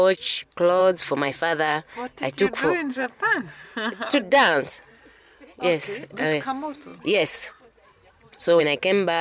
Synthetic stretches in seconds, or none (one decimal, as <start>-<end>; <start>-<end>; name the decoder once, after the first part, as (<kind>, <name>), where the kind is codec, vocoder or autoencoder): 0.8-2.4 (vocoder, BigVGAN v2); 2.9-4.2; 6.9-8.6